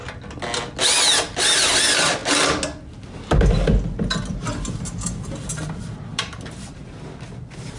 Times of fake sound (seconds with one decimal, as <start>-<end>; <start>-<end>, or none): 6.1-6.8